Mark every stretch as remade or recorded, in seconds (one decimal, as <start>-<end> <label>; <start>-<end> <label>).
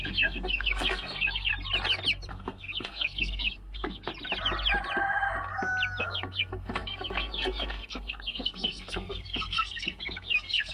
0.0-1.5 remade; 1.5-2.3 recorded; 2.3-4.1 remade; 4.1-6.0 recorded; 6.0-10.7 remade